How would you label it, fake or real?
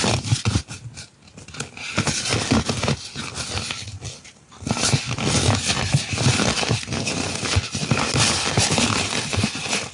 real